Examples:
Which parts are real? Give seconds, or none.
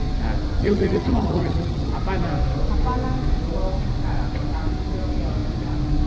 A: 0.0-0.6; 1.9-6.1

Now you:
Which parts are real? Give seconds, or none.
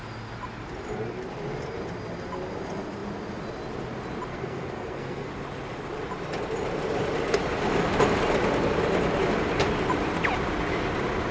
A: 0.0-4.3; 5.3-11.3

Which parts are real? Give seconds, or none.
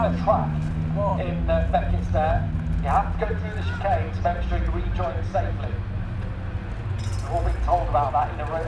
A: 0.0-1.1; 2.0-8.7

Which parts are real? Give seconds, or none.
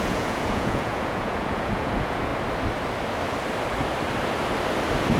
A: 2.3-5.2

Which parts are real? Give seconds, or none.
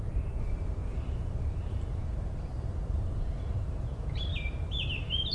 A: 0.8-1.4; 4.3-5.3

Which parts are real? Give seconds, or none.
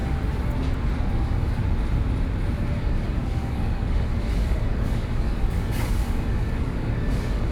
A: 0.0-1.1; 1.6-2.8